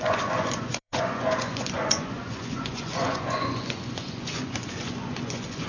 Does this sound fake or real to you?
fake